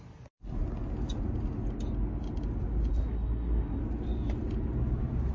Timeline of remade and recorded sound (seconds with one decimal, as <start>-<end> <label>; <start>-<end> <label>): 0.0-2.9 recorded; 2.9-3.8 remade; 3.8-5.3 recorded